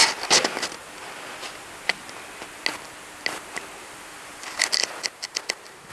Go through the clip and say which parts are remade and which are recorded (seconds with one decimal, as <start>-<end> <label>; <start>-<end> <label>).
0.0-2.7 recorded; 2.7-3.3 remade; 3.3-5.9 recorded